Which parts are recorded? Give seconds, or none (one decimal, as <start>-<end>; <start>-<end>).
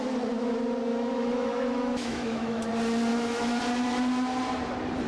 0.0-0.9; 2.7-3.1; 3.6-5.1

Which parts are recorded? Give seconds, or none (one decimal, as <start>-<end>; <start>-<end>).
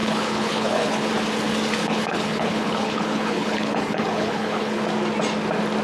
1.1-1.8; 4.8-5.8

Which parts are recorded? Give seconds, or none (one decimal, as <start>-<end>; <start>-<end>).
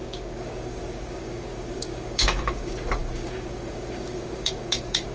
none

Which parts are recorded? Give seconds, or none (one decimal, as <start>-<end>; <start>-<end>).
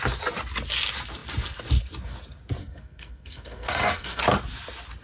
0.0-2.6; 4.2-5.0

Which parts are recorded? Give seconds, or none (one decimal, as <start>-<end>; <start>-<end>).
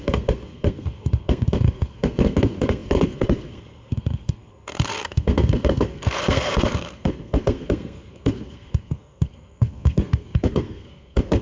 none